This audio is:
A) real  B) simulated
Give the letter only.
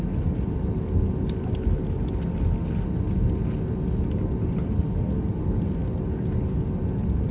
A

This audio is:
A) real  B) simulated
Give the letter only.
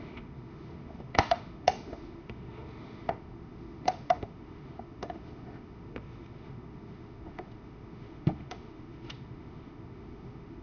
B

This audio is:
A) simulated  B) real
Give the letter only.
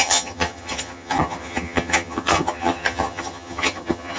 A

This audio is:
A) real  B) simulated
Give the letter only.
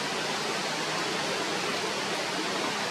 A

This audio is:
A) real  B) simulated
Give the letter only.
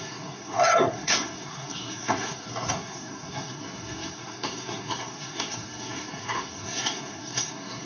B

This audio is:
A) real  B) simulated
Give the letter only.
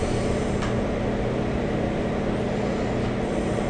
A